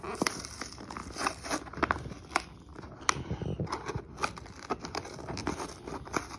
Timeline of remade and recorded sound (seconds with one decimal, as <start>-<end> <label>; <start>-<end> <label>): 0.0-6.4 recorded